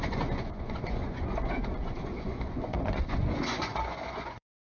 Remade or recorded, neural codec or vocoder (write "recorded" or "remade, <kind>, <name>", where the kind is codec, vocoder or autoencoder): remade, vocoder, Vocos